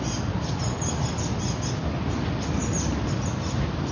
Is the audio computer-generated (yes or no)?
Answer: no